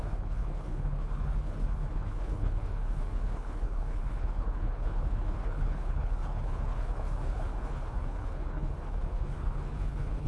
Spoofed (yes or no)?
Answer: yes